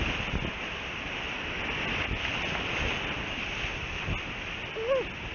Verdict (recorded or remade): recorded